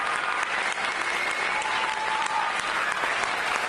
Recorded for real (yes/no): yes